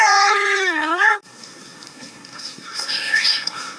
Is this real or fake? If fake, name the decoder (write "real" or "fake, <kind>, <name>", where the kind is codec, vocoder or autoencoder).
fake, codec, SNAC